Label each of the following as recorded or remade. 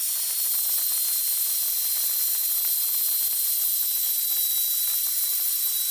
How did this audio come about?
recorded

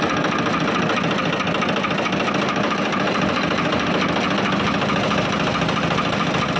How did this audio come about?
recorded